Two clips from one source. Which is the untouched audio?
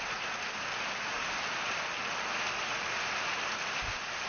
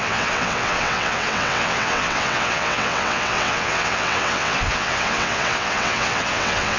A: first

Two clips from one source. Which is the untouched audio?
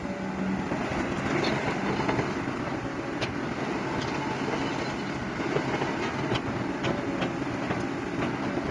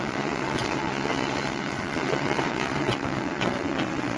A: first